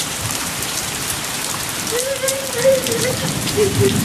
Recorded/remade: remade